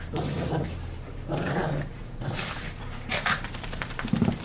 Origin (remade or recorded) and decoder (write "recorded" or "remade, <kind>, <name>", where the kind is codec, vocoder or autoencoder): remade, vocoder, BigVGAN v2